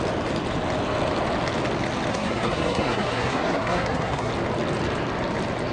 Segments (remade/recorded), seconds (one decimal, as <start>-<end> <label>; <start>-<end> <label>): 0.0-2.1 recorded; 2.1-4.3 remade; 4.3-5.7 recorded